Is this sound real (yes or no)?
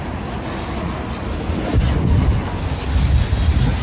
yes